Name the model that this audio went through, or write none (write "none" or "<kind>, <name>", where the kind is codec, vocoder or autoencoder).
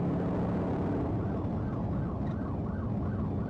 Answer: none